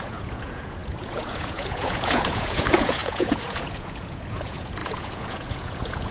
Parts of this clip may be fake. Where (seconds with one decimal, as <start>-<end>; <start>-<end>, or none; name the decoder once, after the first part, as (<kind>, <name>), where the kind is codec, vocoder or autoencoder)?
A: 0.0-6.1 (vocoder, Vocos)